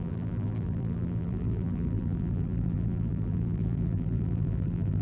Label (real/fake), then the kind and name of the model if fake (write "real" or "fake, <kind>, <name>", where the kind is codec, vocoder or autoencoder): fake, vocoder, BigVGAN v2